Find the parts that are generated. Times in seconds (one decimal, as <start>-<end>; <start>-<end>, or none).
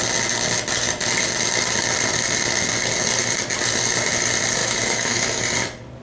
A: 4.6-5.4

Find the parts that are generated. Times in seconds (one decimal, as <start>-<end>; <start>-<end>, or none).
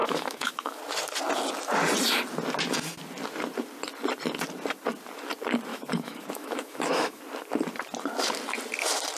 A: 0.0-0.8; 5.7-7.2